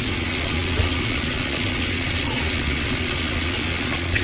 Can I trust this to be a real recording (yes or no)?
no